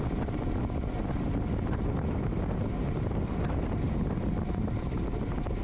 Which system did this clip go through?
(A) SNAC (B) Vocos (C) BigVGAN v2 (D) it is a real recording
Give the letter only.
D